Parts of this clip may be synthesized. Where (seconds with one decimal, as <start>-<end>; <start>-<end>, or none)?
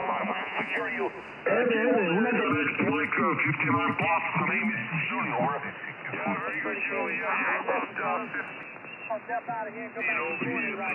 0.0-0.8; 7.3-7.9